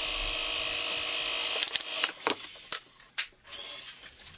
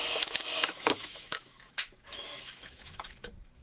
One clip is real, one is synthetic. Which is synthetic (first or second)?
second